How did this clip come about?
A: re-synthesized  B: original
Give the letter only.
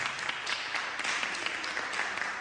B